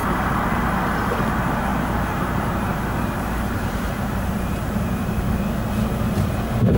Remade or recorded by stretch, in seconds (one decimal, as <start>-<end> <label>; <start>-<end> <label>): 0.0-1.2 remade; 1.2-1.7 recorded; 1.7-5.3 remade; 5.3-6.8 recorded